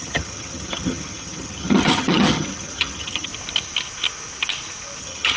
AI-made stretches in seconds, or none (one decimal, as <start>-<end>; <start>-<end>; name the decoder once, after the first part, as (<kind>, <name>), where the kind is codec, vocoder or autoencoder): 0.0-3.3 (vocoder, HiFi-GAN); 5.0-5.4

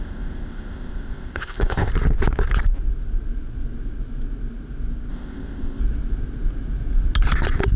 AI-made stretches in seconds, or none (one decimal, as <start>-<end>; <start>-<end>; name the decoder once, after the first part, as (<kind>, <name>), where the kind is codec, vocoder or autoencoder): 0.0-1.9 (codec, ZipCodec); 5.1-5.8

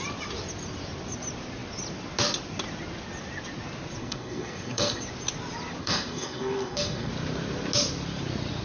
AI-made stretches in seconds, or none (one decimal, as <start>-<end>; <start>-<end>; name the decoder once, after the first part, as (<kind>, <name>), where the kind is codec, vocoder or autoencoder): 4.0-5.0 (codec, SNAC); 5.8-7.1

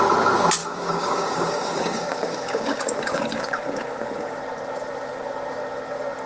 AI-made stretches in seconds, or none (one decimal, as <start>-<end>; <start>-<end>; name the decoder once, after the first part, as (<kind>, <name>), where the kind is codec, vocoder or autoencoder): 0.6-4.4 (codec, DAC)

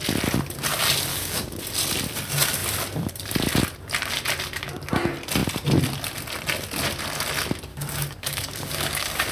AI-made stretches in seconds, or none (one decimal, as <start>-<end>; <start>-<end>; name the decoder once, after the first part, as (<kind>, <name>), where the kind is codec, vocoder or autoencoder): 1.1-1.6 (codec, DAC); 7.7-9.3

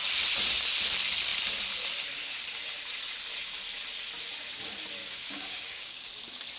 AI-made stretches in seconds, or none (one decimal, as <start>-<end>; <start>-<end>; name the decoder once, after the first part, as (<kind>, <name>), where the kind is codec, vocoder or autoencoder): 5.0-6.1 (codec, DAC)